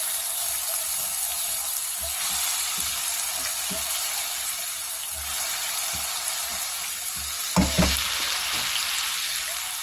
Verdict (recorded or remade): recorded